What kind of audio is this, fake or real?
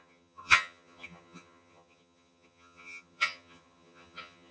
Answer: fake